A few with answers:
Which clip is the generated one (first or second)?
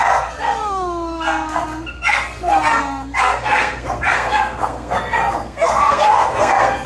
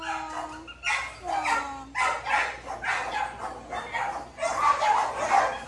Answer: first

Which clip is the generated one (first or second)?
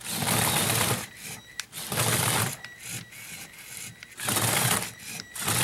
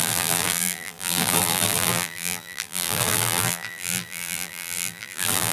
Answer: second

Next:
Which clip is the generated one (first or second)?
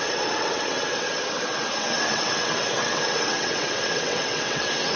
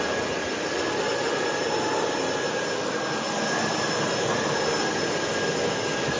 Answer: first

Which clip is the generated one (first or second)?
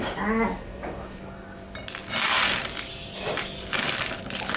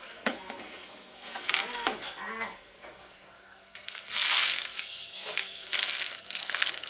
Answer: second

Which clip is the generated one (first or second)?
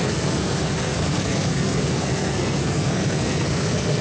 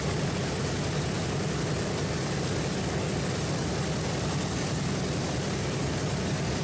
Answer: first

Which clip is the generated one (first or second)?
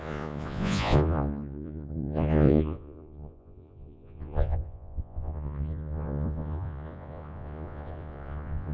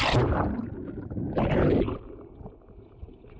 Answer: first